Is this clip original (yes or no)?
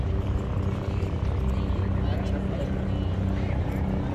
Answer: yes